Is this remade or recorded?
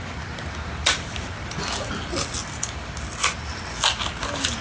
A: recorded